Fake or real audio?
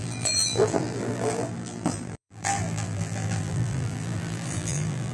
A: fake